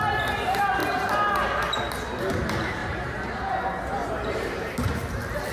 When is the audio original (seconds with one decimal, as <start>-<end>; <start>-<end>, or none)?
0.0-2.8; 3.5-4.0; 5.0-5.5